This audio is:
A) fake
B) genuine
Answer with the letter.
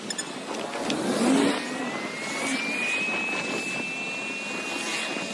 B